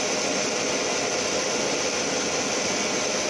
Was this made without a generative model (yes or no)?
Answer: yes